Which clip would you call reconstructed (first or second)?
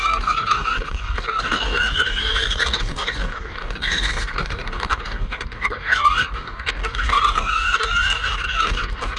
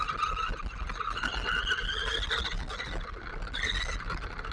first